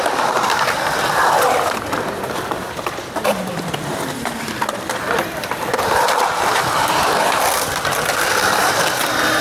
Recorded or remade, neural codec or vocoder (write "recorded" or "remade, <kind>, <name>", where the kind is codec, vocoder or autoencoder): remade, vocoder, BigVGAN v2